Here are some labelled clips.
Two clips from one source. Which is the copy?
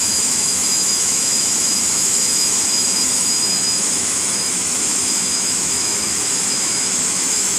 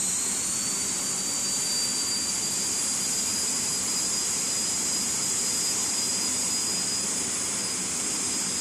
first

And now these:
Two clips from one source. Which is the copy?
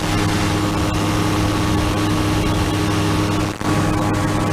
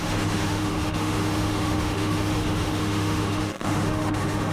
second